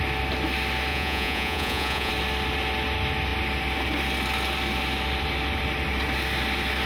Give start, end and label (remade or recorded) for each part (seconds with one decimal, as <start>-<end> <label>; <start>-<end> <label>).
0.0-0.9 recorded; 0.9-2.1 remade; 2.1-6.9 recorded